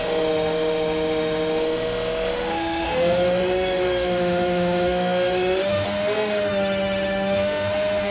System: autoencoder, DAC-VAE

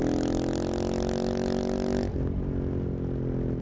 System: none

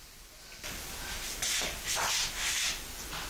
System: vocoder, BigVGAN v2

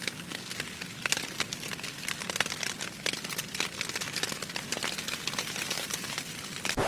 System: none